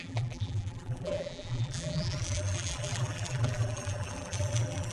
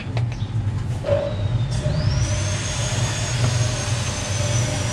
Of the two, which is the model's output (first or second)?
first